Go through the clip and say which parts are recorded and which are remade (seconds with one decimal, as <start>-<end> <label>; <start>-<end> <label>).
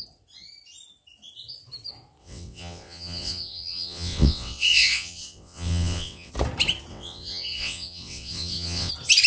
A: 0.0-2.2 recorded; 2.2-6.3 remade; 6.3-6.9 recorded; 6.9-8.9 remade; 8.9-9.3 recorded